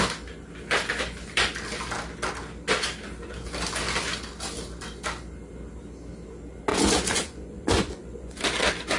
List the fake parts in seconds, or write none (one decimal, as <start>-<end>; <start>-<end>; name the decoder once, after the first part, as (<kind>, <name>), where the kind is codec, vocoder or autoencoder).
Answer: 6.7-8.4 (vocoder, Vocos)